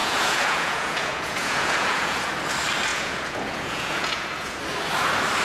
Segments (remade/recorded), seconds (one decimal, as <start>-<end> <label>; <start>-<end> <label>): 0.0-2.3 remade; 2.3-2.9 recorded; 2.9-4.6 remade; 4.6-5.4 recorded